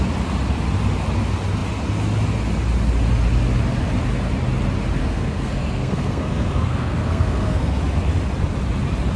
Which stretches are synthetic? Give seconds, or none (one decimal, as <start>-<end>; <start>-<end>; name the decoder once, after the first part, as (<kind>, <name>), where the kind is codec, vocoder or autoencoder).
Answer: 5.0-7.8 (codec, SNAC)